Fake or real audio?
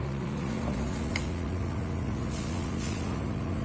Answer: fake